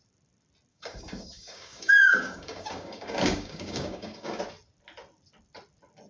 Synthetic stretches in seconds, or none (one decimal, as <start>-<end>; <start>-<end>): 0.7-4.4